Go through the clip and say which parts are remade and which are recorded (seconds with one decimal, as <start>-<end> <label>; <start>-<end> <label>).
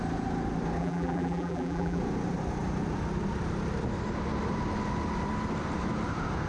0.0-0.8 recorded; 0.8-2.0 remade; 2.0-6.5 recorded